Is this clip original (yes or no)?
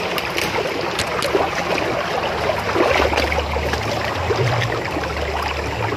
yes